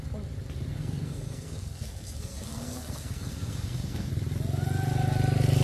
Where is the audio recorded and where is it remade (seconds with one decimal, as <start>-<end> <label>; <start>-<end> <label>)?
0.0-0.7 recorded; 0.7-4.1 remade; 4.1-5.6 recorded